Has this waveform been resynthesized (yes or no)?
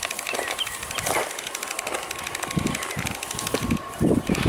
no